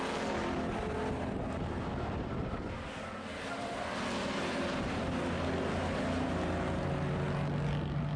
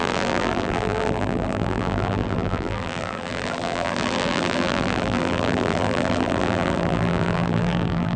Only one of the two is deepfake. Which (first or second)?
second